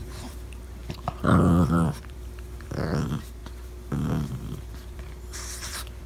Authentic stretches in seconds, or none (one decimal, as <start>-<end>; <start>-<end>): 0.8-1.7; 3.4-4.7